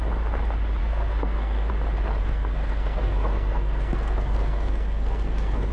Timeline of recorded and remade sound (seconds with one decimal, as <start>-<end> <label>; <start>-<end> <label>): 0.0-0.8 recorded; 0.8-1.7 remade; 1.7-2.2 recorded; 2.2-5.7 remade